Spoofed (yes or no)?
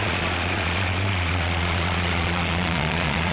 yes